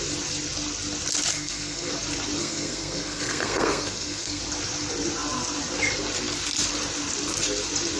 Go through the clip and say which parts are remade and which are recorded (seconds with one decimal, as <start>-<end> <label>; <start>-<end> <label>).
0.0-1.3 recorded; 1.3-1.9 remade; 1.9-2.4 recorded; 2.4-4.4 remade; 4.4-8.0 recorded